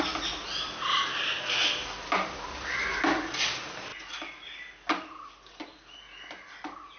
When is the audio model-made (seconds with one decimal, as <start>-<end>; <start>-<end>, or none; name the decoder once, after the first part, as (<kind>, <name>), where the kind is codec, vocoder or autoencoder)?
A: none